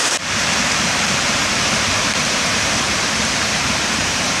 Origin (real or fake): fake